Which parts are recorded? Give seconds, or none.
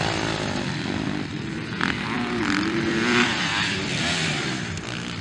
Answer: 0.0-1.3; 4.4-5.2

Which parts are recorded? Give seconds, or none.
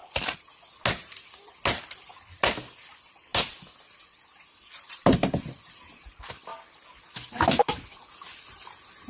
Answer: 0.0-9.1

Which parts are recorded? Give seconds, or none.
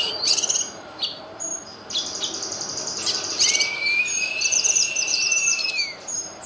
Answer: 1.5-3.3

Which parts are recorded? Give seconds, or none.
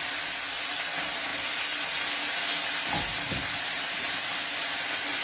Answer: 1.3-3.0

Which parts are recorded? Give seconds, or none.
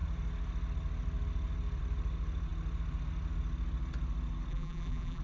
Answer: 0.0-4.5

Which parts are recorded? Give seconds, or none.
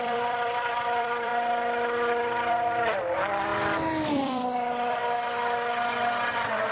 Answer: 1.3-2.5; 3.5-4.1; 5.0-6.3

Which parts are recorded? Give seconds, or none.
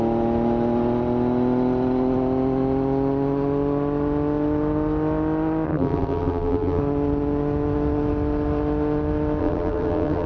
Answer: 0.0-5.7; 6.8-9.4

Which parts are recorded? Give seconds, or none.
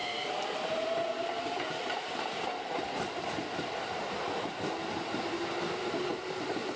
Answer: 0.0-6.8